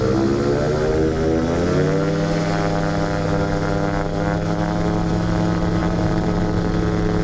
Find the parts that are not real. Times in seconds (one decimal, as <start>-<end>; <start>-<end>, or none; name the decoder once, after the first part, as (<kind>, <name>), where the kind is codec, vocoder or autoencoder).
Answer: 5.8-6.4 (vocoder, BigVGAN v2)